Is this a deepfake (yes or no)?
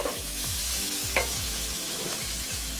yes